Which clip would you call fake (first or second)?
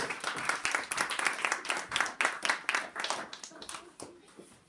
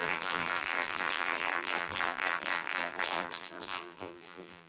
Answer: second